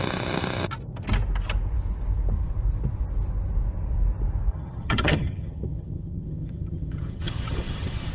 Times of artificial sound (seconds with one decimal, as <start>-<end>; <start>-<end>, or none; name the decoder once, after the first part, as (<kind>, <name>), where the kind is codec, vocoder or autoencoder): 4.5-8.1 (vocoder, HiFi-GAN)